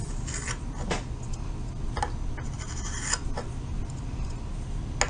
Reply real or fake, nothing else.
real